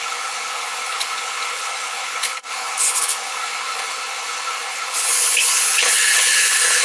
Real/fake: fake